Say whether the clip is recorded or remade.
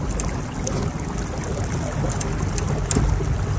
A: recorded